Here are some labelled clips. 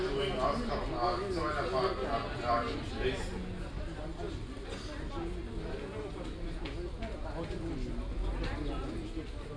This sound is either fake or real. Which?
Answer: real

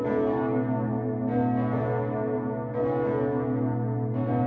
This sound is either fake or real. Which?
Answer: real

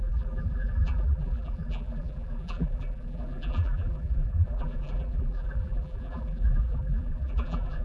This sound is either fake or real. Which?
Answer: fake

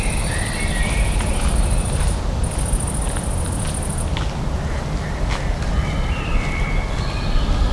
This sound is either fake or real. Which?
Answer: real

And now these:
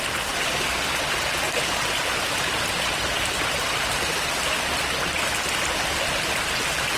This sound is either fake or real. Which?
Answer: real